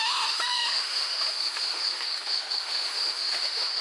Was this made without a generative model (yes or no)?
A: no